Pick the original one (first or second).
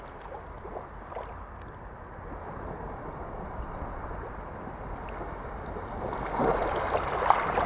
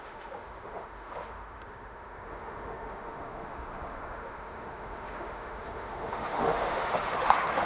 first